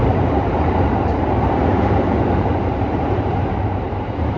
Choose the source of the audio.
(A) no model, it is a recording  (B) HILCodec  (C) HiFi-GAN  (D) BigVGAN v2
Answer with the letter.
D